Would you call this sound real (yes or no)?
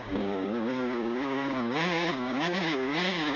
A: no